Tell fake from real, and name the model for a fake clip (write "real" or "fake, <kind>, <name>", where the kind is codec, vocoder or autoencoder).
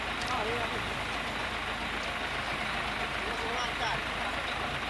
real